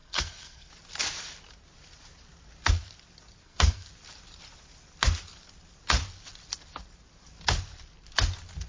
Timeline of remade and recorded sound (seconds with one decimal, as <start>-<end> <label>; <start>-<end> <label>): 0.0-0.7 remade; 0.7-3.4 recorded; 3.4-3.9 remade; 3.9-8.7 recorded